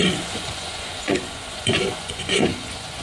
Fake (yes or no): yes